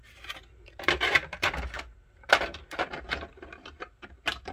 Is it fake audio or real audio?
fake